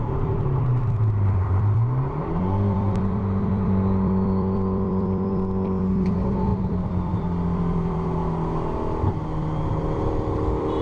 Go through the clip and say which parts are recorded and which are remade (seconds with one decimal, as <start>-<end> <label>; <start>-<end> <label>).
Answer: 0.0-8.2 remade; 8.2-9.1 recorded; 9.1-10.8 remade